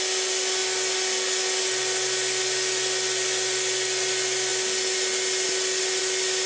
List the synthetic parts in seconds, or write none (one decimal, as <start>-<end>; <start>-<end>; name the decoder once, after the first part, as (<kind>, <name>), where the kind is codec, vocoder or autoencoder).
none